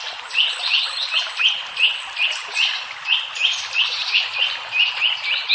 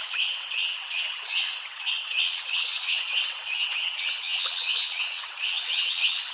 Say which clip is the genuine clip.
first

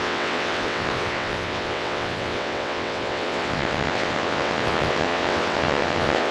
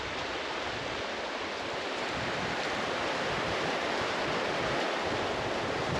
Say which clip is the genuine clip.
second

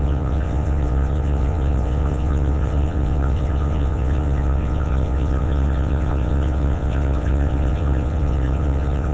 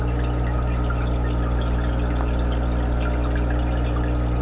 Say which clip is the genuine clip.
second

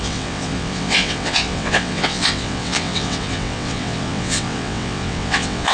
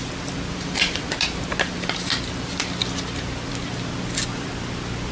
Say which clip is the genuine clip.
second